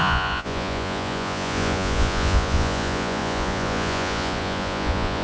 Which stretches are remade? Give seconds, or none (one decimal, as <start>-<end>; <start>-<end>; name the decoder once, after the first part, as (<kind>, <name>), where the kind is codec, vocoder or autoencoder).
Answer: 0.0-5.2 (vocoder, Vocos)